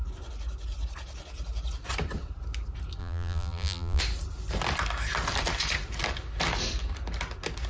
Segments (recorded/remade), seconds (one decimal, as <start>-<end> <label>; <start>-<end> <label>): 0.0-3.0 recorded; 3.0-4.0 remade; 4.0-7.7 recorded